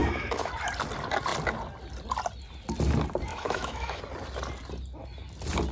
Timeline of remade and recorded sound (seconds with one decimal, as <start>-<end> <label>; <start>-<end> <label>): 0.0-0.5 remade; 0.5-3.3 recorded; 3.3-4.0 remade; 4.0-5.7 recorded